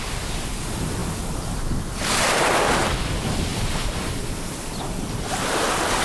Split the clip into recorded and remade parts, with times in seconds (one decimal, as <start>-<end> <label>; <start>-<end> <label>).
0.0-6.0 recorded